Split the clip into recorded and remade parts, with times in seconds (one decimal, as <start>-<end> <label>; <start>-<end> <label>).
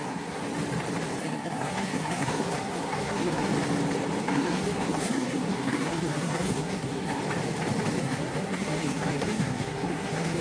0.0-0.4 remade; 0.4-1.2 recorded; 1.2-3.5 remade; 3.5-4.2 recorded; 4.2-7.2 remade; 7.2-8.0 recorded; 8.0-10.4 remade